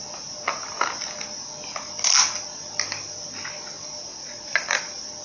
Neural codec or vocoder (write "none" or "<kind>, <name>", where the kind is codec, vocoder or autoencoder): none